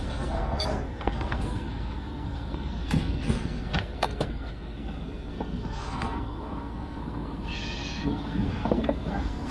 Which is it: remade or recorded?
remade